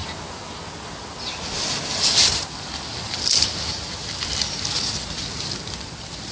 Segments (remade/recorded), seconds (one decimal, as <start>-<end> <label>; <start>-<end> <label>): 0.0-6.3 recorded